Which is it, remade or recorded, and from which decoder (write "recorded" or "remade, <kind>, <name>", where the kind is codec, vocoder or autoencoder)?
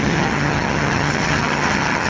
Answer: remade, vocoder, HiFi-GAN